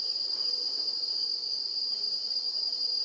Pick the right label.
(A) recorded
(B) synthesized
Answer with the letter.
A